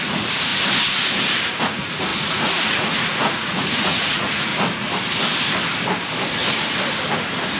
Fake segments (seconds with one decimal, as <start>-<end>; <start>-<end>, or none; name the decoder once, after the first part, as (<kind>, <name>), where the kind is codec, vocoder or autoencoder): 0.0-0.5 (vocoder, Vocos); 1.6-4.5